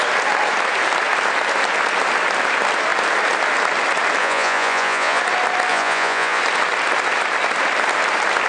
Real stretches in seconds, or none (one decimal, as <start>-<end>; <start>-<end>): 0.0-4.2; 5.2-5.7; 6.4-8.5